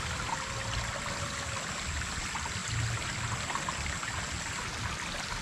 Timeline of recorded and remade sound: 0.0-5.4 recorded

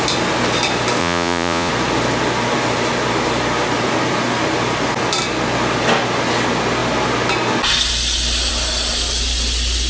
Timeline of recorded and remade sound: 0.0-1.0 recorded; 1.0-1.7 remade; 1.7-9.9 recorded

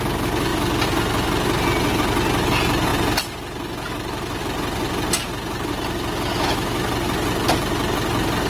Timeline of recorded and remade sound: 0.0-6.3 recorded; 6.3-6.9 remade; 6.9-8.5 recorded